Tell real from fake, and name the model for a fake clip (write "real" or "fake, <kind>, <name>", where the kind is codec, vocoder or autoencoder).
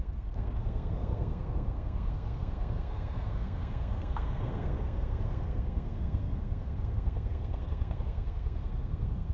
fake, codec, SNAC